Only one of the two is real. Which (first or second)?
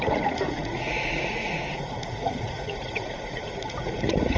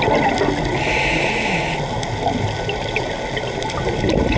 second